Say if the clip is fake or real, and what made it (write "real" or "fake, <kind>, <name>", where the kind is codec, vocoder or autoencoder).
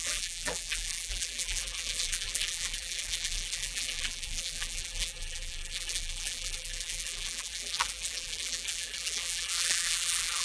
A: fake, vocoder, BigVGAN v2